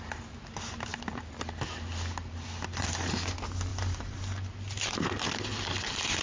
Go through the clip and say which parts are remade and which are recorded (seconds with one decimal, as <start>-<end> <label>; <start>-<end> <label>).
0.0-3.7 recorded; 3.7-5.1 remade; 5.1-6.2 recorded